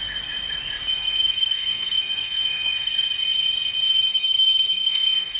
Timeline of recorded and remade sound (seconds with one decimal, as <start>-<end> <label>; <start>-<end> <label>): 0.0-0.9 recorded; 0.9-2.9 remade; 2.9-4.1 recorded; 4.1-5.4 remade